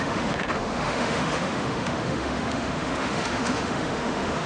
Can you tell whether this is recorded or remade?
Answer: remade